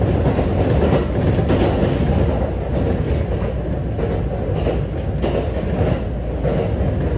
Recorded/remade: recorded